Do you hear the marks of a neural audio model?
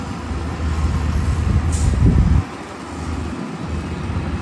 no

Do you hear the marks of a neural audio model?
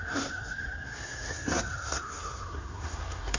yes